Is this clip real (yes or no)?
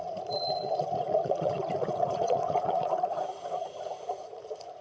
no